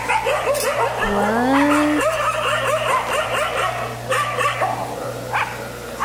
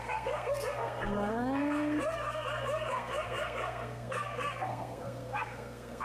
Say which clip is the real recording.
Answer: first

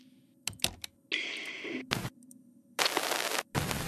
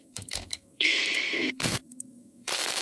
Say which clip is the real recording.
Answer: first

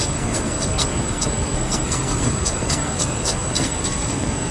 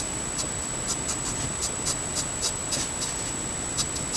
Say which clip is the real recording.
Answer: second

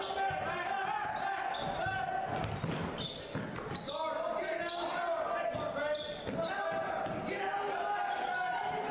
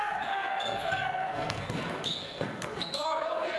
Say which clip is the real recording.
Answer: first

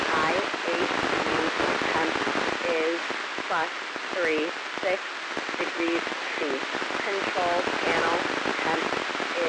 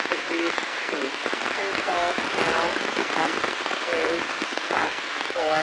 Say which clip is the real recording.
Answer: first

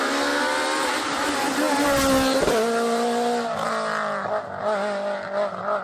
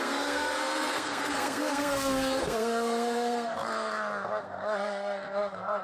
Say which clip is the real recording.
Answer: first